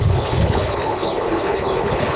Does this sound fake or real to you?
fake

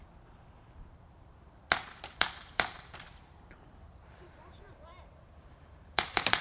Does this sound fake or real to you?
fake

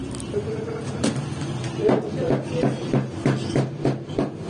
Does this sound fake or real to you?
real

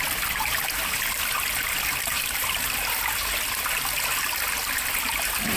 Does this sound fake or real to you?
real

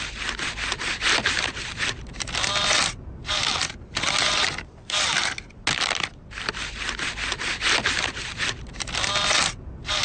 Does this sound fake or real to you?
real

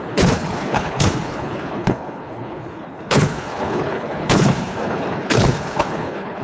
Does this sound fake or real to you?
fake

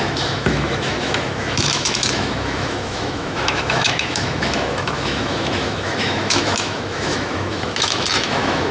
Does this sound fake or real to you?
fake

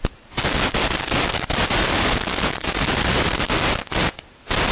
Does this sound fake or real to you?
real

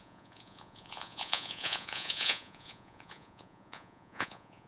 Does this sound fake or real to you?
fake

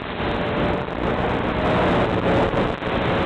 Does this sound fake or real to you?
real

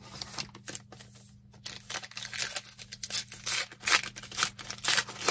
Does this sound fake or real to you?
real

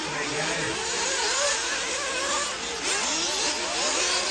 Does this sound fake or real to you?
real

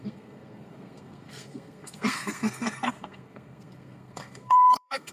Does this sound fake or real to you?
fake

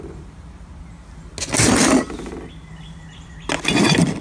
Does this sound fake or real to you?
real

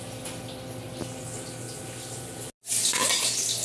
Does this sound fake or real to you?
real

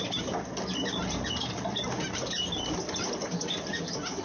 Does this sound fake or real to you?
real